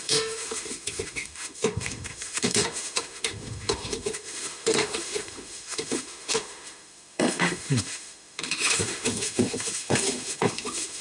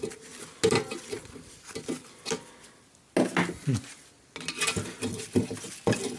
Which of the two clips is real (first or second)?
second